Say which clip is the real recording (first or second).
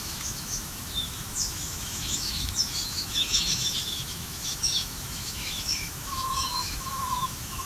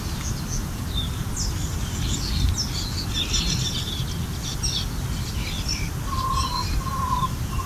second